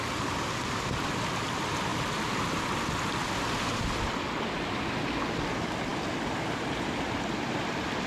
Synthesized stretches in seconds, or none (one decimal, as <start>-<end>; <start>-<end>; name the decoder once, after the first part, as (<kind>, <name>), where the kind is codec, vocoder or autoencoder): none